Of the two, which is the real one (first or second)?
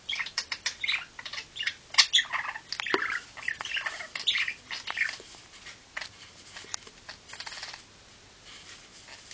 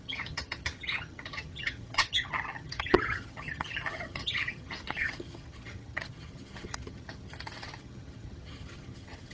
first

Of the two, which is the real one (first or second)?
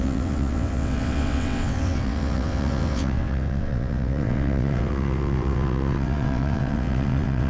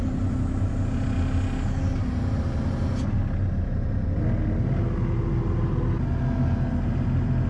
second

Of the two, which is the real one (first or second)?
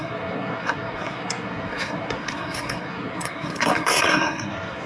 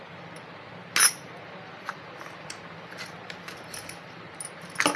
second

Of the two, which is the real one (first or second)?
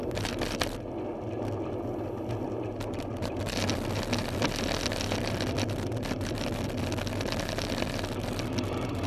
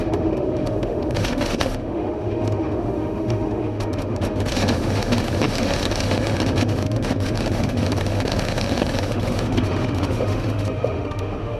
first